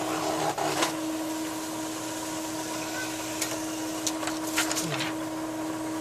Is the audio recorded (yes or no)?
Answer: yes